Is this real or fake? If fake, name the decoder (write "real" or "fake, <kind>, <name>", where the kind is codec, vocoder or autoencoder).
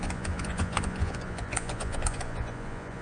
fake, vocoder, Vocos